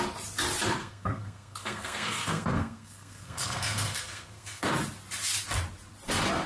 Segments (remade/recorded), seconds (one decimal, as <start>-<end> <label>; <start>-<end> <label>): 0.0-0.8 recorded; 0.8-4.7 remade; 4.7-6.5 recorded